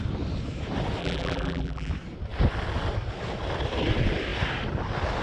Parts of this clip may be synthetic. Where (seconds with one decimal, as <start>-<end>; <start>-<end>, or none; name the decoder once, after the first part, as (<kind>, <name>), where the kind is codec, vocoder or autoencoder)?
1.0-1.9 (vocoder, BigVGAN v2)